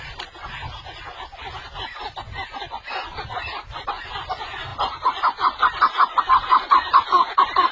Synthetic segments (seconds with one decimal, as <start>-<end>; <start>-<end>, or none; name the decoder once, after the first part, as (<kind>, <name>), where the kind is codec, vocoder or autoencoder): none